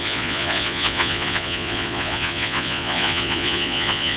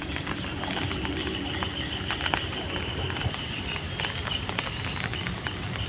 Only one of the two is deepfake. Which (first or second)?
first